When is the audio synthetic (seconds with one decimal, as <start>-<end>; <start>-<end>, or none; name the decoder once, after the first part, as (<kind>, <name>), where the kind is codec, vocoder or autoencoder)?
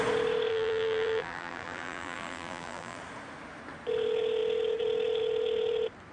0.5-3.0 (vocoder, BigVGAN v2)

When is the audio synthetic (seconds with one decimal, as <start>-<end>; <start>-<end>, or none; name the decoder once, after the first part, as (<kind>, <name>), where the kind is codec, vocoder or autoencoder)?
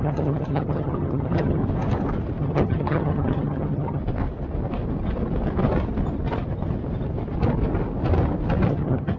0.0-1.6 (vocoder, HiFi-GAN); 2.4-4.0; 8.7-9.2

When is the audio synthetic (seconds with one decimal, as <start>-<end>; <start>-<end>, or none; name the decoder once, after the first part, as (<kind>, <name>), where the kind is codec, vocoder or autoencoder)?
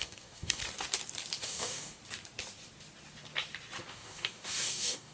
0.0-0.6 (codec, DAC); 1.4-2.0; 3.9-5.1